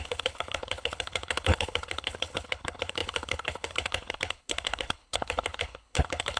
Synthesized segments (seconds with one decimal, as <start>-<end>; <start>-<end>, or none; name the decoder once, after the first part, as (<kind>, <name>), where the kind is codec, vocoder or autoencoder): 0.0-6.4 (codec, HILCodec)